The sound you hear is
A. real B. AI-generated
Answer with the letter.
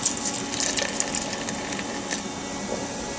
A